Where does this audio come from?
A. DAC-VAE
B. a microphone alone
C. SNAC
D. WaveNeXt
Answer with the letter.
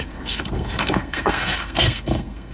C